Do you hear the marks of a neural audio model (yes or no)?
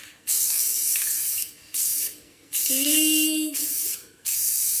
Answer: yes